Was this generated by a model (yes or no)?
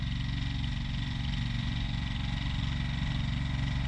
no